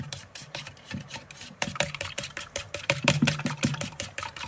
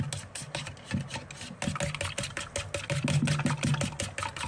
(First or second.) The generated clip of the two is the first